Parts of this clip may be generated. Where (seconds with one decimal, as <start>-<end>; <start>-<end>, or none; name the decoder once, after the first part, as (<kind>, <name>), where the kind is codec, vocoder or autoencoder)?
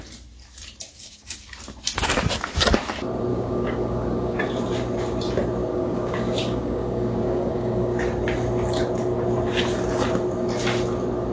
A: 0.9-1.5 (codec, DAC); 3.3-4.4; 5.7-8.0